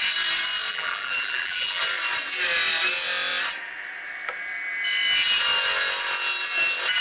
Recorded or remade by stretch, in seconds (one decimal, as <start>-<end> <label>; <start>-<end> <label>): 0.0-0.7 recorded; 0.7-1.8 remade; 1.8-7.0 recorded